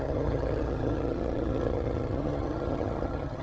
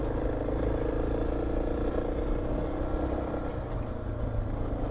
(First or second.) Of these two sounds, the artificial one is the first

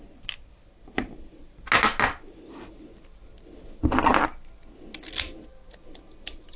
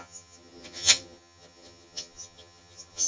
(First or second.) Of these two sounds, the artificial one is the second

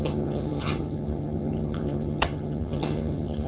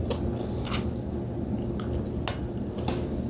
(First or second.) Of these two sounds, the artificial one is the first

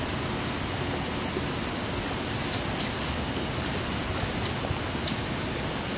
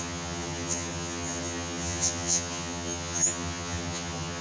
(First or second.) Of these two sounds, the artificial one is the second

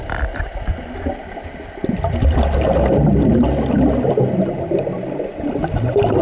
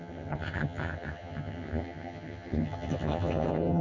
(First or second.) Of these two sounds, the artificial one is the second